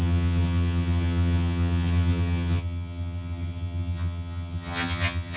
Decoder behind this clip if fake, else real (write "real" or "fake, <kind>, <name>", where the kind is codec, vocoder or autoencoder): fake, vocoder, HiFi-GAN